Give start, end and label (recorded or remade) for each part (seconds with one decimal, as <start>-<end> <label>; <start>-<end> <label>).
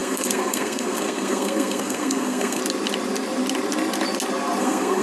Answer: 0.0-2.6 remade; 2.6-4.6 recorded; 4.6-5.0 remade